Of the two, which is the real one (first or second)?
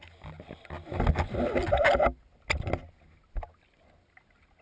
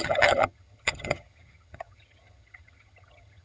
first